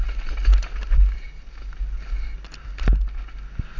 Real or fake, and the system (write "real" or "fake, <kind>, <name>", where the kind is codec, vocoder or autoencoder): real